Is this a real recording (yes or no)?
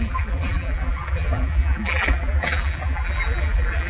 no